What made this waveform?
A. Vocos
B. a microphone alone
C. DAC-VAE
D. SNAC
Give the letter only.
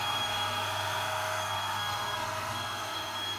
D